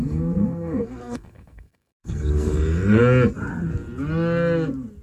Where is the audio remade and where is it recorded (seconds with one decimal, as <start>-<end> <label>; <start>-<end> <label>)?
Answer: 0.0-3.0 remade; 3.0-5.0 recorded